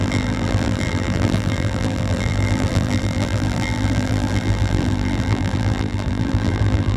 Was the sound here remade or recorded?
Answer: remade